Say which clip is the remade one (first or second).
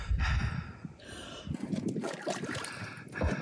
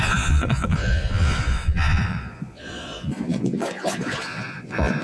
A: second